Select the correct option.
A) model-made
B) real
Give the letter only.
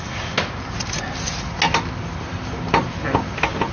B